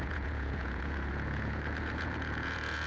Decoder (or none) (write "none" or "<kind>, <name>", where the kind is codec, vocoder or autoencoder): vocoder, Vocos